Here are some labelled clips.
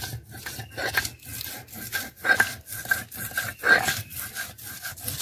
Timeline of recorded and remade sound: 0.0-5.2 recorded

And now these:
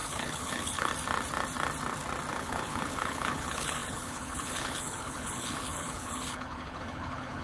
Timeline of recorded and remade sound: 0.0-0.9 remade; 0.9-2.3 recorded; 2.3-7.4 remade